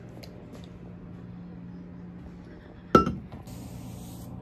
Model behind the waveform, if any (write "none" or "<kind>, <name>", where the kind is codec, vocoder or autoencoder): none